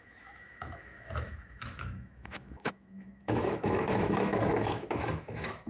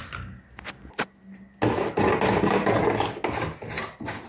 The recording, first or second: second